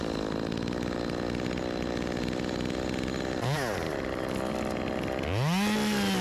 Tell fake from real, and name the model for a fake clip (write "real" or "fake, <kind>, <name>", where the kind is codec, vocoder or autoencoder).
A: real